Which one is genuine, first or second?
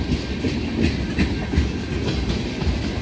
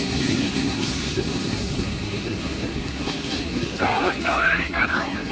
first